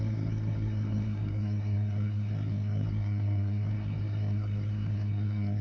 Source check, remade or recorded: remade